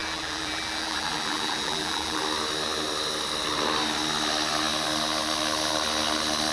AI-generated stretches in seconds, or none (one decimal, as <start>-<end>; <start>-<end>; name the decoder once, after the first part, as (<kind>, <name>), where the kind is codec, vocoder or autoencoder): 0.0-2.2 (vocoder, BigVGAN v2)

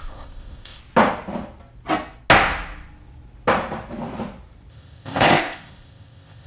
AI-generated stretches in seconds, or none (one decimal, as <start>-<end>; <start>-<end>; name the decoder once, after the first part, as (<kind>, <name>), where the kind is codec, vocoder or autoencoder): 0.0-0.8 (codec, ZipCodec); 4.7-6.5

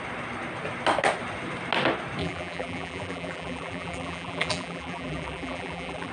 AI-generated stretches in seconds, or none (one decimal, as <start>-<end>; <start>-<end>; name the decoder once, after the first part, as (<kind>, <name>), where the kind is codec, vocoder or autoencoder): 2.2-6.1 (vocoder, BigVGAN v2)

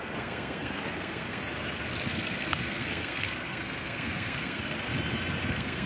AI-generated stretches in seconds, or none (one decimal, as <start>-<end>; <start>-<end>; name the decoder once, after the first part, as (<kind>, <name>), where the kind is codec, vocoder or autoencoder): 0.0-1.4 (codec, SNAC); 2.1-4.9; 5.5-5.9

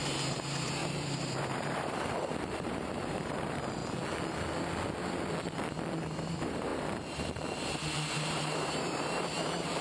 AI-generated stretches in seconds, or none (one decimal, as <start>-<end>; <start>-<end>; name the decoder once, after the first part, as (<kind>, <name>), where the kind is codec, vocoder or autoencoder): 0.0-3.8 (vocoder, BigVGAN v2); 5.9-9.8

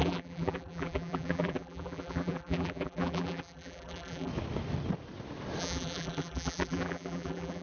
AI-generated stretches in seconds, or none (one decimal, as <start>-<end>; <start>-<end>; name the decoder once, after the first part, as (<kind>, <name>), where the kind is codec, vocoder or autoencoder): 0.0-4.3 (vocoder, BigVGAN v2); 5.6-7.6